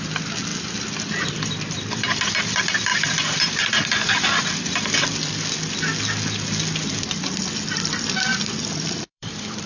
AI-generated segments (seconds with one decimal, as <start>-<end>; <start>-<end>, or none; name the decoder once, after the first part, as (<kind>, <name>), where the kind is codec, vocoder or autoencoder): 0.5-2.3 (vocoder, BigVGAN v2); 2.9-5.7; 8.3-9.7